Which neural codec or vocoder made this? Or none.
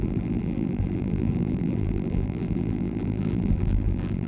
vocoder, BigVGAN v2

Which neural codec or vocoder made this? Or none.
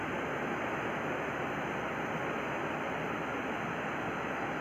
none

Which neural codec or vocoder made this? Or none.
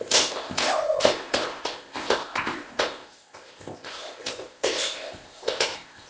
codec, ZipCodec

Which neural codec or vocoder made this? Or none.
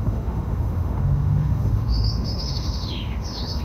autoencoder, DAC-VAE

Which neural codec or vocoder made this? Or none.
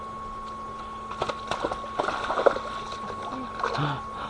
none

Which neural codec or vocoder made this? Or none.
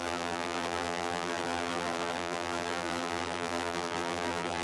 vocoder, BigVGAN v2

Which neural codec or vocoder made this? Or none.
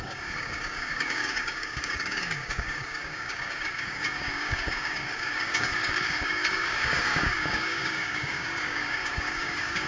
codec, DAC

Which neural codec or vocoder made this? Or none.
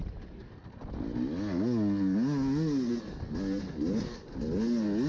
none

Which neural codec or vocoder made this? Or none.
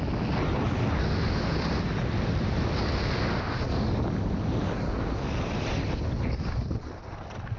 none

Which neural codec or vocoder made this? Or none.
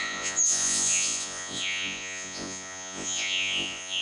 vocoder, Vocos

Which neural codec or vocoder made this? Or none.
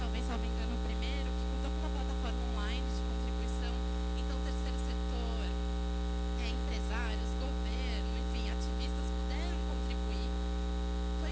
none